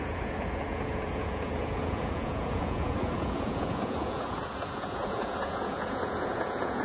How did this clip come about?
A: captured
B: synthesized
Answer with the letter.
B